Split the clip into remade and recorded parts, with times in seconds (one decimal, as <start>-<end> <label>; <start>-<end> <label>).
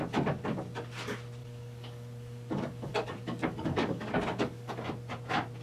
0.0-1.4 recorded; 1.4-4.8 remade; 4.8-5.6 recorded